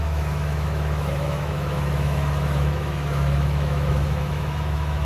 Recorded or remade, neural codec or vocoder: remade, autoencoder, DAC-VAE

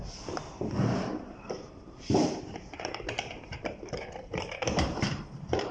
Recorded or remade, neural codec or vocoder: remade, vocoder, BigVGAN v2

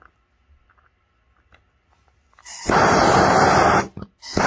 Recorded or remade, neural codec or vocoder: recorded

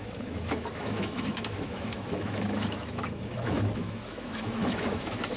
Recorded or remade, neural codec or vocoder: remade, autoencoder, DAC-VAE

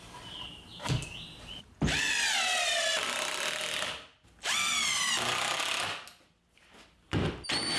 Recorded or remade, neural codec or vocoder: recorded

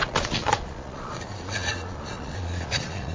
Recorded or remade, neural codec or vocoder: remade, vocoder, Vocos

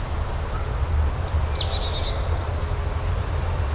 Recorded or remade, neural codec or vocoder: recorded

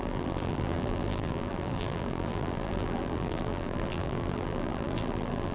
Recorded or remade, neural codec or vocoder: remade, vocoder, BigVGAN v2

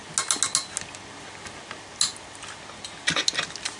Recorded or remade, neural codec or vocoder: recorded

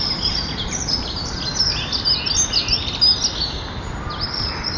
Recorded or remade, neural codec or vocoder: recorded